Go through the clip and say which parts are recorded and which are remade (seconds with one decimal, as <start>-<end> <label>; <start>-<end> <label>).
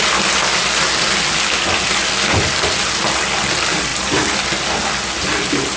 0.0-5.8 recorded